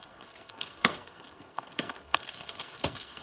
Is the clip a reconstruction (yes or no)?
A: yes